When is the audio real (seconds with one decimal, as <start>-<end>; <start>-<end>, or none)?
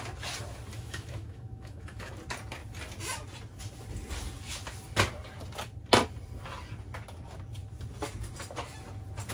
0.0-0.7; 2.1-9.3